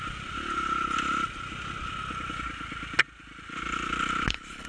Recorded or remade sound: recorded